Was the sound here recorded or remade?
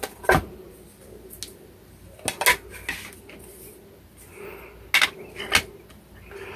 recorded